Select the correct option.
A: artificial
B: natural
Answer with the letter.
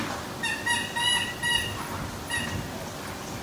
B